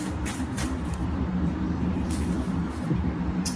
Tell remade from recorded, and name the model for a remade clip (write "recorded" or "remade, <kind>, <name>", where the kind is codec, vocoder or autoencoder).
remade, vocoder, BigVGAN v2